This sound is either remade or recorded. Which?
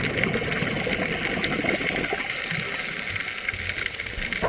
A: recorded